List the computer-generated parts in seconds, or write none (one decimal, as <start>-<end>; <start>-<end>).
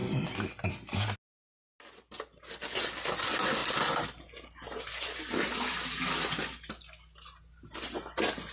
none